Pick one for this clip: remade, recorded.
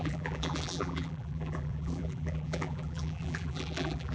remade